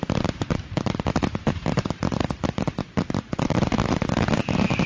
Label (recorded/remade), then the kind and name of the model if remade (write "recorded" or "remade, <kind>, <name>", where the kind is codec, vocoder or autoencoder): remade, vocoder, BigVGAN v2